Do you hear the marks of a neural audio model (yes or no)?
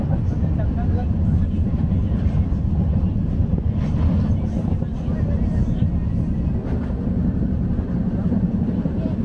no